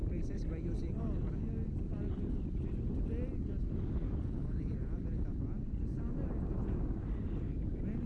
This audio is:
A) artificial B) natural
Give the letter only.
B